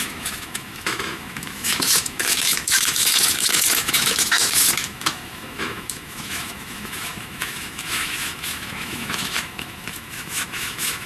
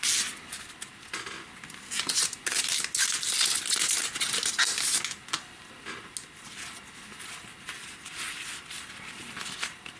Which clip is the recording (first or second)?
second